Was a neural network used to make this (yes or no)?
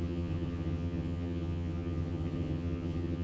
yes